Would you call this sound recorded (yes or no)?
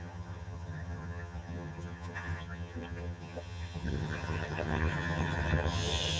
no